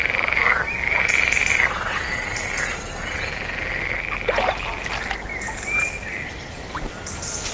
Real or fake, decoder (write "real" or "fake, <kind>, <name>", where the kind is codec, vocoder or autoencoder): real